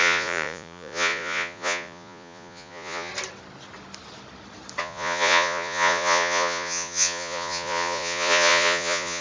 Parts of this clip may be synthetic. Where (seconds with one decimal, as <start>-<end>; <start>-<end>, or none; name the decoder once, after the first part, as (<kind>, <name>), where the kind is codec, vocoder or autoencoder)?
0.0-3.1 (vocoder, Vocos); 4.8-9.2